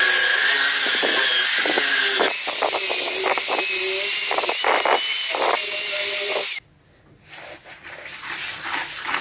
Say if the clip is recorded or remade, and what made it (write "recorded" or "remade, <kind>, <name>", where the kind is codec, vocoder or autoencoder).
recorded